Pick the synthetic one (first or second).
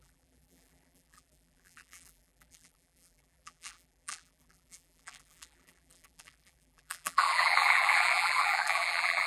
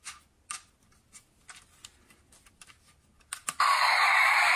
first